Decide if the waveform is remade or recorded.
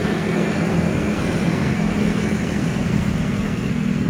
remade